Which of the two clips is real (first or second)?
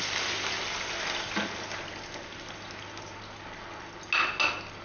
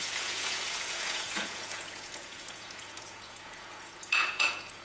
first